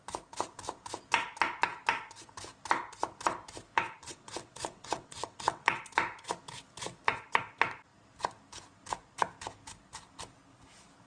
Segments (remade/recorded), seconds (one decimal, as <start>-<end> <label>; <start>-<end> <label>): 0.0-4.0 recorded; 4.0-5.8 remade; 5.8-11.1 recorded